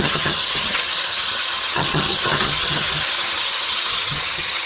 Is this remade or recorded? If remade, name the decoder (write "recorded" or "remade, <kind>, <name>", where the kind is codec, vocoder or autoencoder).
remade, vocoder, HiFi-GAN